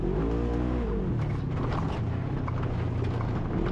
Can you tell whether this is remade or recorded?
recorded